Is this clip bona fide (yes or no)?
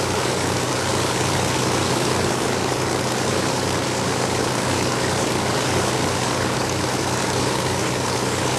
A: no